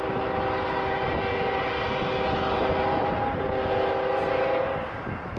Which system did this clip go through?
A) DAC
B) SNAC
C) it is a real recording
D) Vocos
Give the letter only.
C